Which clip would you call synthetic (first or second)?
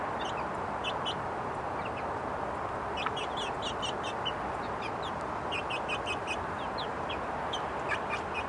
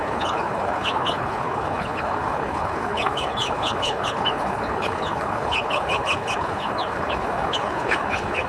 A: second